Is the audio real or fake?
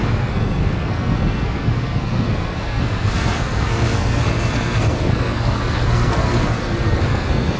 fake